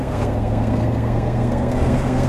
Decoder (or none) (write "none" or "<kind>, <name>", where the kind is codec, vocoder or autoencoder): codec, SNAC